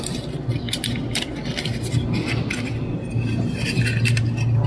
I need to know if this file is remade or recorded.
recorded